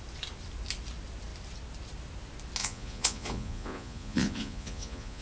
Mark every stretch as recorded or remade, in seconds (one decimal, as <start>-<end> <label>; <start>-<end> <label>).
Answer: 0.0-2.6 recorded; 2.6-5.2 remade